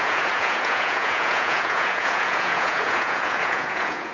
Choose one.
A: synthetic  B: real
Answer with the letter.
A